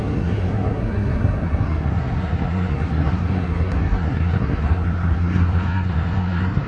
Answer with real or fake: fake